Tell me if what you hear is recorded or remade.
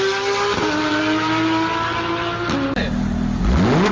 recorded